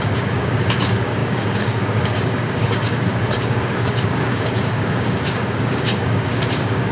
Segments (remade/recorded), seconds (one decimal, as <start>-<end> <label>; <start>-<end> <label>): 0.0-6.9 remade